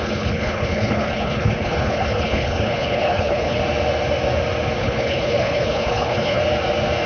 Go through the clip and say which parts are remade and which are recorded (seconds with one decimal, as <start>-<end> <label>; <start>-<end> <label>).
0.0-3.6 remade; 3.6-4.8 recorded; 4.8-6.4 remade; 6.4-7.1 recorded